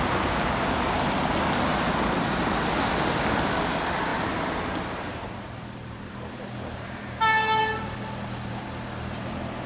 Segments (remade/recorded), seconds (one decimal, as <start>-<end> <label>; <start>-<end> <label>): 0.0-4.1 recorded; 4.1-8.0 remade; 8.0-9.7 recorded